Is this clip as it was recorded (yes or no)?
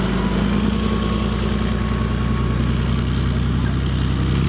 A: yes